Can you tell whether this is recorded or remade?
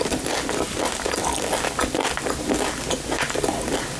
recorded